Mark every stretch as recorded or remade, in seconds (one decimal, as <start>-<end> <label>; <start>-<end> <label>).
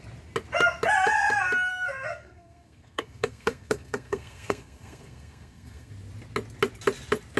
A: 0.0-1.7 recorded; 1.7-5.9 remade; 5.9-7.4 recorded